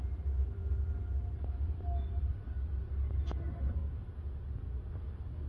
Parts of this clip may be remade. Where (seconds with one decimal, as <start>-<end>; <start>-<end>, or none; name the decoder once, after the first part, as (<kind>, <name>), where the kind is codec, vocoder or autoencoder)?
3.8-4.9 (vocoder, Vocos)